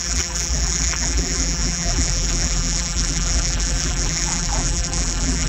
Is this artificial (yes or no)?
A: yes